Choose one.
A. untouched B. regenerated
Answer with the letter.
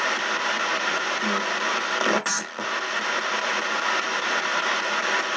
A